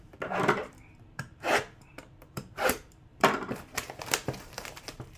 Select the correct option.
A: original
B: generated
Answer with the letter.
B